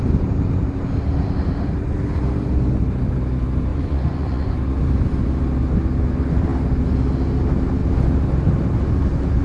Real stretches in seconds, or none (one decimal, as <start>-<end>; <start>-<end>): 0.0-3.7; 4.6-9.4